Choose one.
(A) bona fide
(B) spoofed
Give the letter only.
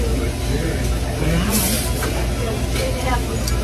A